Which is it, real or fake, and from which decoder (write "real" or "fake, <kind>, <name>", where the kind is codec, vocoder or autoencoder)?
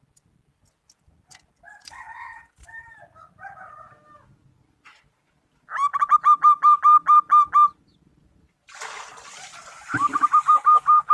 real